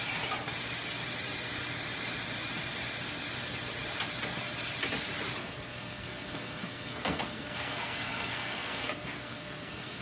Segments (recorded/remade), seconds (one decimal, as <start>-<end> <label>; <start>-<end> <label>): 0.0-5.4 recorded; 5.4-10.0 remade